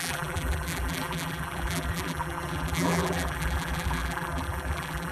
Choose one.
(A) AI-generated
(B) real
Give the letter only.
A